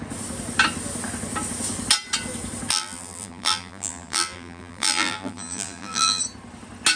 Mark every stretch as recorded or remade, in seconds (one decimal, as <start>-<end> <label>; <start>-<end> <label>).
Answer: 0.0-2.7 recorded; 2.7-6.2 remade; 6.2-7.0 recorded